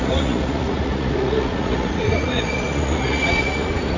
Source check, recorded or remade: remade